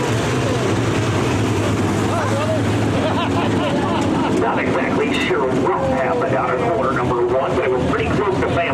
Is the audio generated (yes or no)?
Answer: no